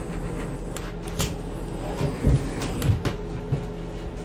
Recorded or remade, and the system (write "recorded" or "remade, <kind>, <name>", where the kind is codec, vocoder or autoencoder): recorded